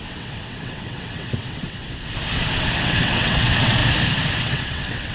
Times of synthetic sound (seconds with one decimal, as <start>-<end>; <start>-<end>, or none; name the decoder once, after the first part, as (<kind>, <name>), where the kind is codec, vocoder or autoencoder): 0.0-1.8 (vocoder, WaveNeXt); 2.8-3.8; 4.4-5.1